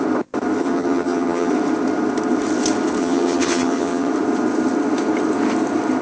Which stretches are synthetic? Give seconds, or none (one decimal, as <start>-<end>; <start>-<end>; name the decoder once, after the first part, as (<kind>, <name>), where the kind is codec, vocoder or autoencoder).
0.6-1.5 (vocoder, HiFi-GAN); 3.0-4.1